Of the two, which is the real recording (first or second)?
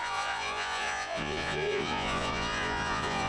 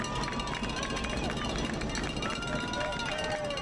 second